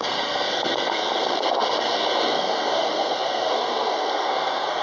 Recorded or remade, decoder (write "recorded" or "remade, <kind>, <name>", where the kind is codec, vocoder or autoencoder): remade, codec, SNAC